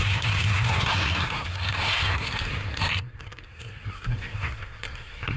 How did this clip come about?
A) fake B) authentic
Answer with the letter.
A